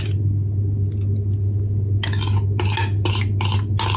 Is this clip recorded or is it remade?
recorded